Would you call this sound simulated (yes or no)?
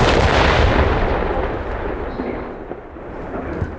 no